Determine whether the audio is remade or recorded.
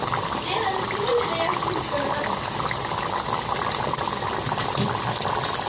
recorded